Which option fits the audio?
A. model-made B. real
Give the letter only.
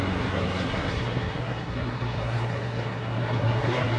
A